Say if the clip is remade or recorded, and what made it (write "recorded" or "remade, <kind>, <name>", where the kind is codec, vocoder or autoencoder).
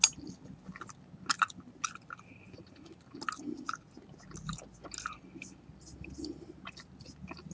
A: recorded